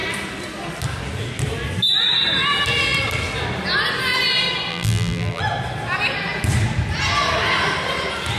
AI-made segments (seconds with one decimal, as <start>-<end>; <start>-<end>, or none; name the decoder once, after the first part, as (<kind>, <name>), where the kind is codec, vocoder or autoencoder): 4.7-5.4 (vocoder, BigVGAN v2)